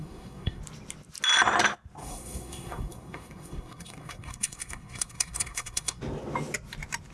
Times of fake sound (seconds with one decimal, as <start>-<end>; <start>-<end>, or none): 0.0-0.6; 2.0-6.0